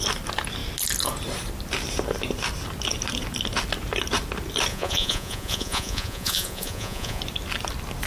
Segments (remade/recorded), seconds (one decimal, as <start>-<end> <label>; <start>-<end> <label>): 0.0-4.7 recorded; 4.7-7.2 remade; 7.2-8.1 recorded